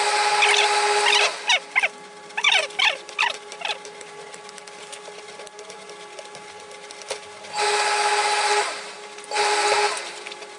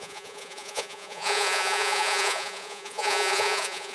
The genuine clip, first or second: first